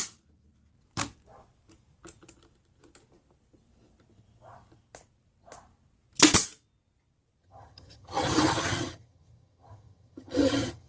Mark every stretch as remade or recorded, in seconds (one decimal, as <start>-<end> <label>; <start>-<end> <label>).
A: 0.0-7.4 recorded; 7.4-10.9 remade